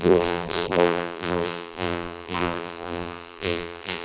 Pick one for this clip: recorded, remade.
remade